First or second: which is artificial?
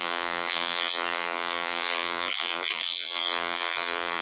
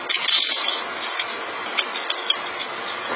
first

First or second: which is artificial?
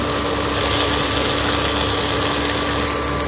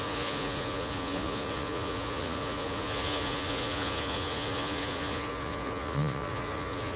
second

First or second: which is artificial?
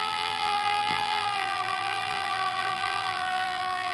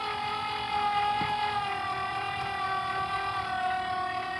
first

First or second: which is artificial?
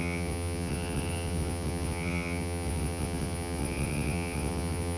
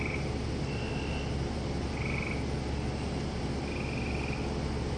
first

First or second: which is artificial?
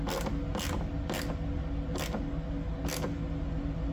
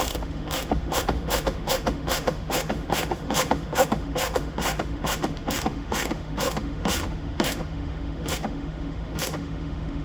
second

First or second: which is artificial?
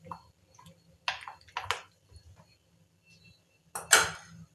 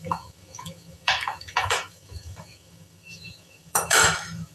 second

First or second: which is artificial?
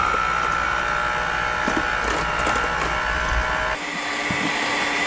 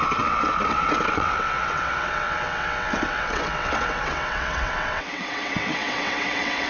second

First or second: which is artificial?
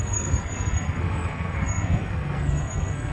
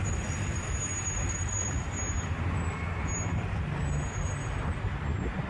first